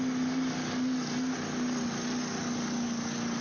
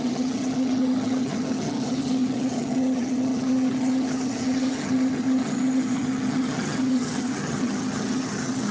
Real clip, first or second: first